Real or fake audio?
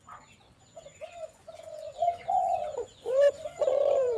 fake